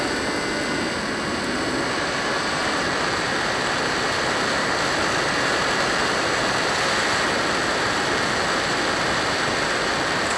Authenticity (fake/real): fake